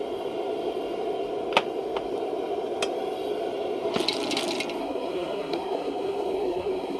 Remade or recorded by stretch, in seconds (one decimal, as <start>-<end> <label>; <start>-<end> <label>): 0.0-4.8 recorded; 4.8-7.0 remade